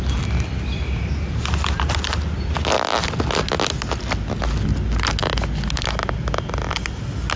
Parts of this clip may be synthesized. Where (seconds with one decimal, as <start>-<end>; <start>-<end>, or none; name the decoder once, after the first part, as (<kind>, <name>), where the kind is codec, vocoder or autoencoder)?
none